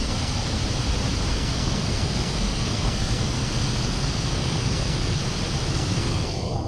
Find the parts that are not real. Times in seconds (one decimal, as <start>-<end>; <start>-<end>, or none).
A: 0.0-0.6; 1.3-5.2; 5.7-6.7